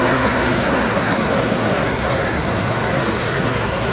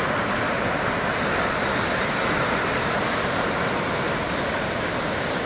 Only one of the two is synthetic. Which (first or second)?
first